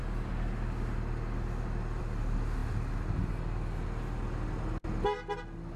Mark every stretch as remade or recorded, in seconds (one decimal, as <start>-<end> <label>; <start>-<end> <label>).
0.0-5.8 recorded